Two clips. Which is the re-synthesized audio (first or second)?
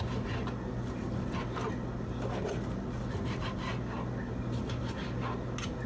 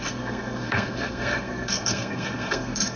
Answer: second